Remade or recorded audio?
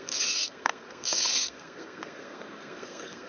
remade